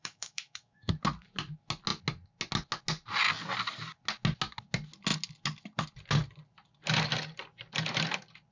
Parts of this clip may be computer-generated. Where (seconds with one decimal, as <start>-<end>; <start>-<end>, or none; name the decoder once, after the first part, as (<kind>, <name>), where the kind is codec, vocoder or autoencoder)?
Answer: 0.0-0.9 (autoencoder, DAC-VAE)